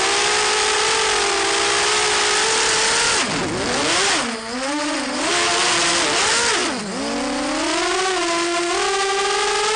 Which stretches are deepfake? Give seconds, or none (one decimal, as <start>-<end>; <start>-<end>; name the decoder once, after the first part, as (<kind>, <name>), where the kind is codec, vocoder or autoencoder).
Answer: none